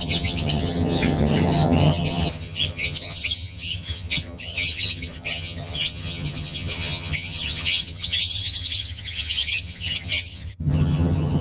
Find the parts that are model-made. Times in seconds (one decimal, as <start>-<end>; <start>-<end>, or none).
0.0-11.4